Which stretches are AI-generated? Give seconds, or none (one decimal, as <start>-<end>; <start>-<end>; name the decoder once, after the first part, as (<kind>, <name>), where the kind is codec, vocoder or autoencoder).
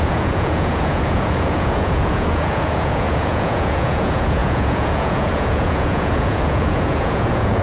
0.0-7.6 (vocoder, Vocos)